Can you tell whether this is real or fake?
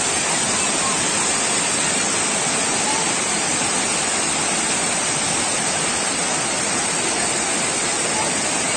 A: real